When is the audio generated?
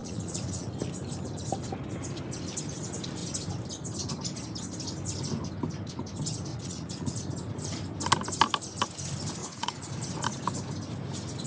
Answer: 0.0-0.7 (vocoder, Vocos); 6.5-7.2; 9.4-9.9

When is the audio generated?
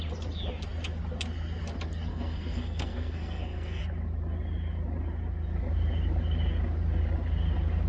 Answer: 2.1-3.8 (codec, SNAC)